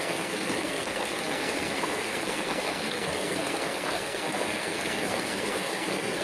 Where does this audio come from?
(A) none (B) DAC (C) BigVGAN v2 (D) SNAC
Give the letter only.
D